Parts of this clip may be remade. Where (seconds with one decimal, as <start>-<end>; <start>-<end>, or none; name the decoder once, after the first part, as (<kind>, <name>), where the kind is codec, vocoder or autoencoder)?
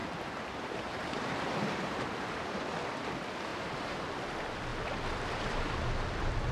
0.0-2.6 (vocoder, BigVGAN v2); 3.5-4.1